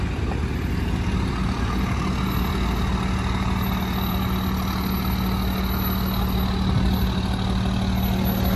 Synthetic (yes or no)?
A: no